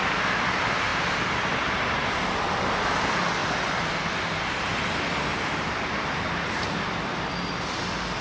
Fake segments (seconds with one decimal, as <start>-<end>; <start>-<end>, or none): 0.9-2.3; 3.4-3.9